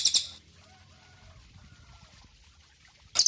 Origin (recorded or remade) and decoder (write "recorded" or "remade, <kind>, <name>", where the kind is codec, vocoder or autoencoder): recorded